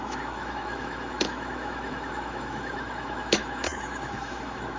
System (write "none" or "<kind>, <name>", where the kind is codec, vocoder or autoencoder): autoencoder, DAC-VAE